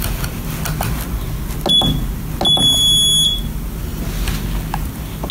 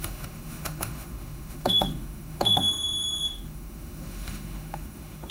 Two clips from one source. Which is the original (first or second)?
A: first